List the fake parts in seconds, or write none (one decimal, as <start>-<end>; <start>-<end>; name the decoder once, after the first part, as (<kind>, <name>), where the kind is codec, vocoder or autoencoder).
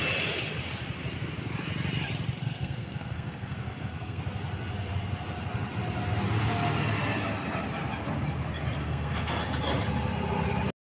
2.4-4.2 (codec, SNAC); 8.8-9.4